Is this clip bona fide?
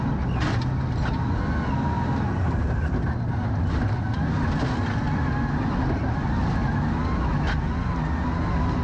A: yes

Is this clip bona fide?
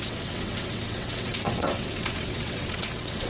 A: no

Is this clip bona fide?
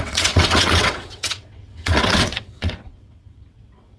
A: no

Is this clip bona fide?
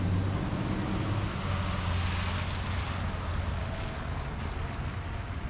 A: yes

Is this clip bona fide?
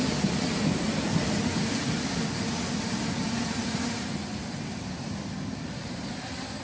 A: yes